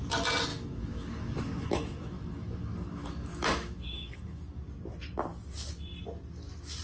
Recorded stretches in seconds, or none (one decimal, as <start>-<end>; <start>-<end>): 0.0-0.5; 4.6-6.8